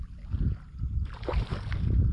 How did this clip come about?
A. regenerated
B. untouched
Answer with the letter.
B